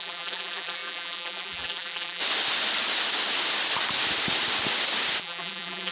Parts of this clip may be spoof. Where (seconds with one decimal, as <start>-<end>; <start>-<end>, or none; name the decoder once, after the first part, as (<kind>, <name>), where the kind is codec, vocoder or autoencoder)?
0.0-2.2 (vocoder, BigVGAN v2); 5.2-5.9